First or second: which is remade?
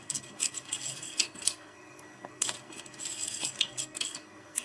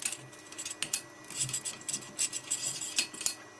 first